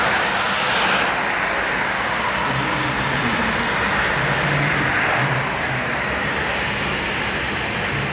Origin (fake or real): real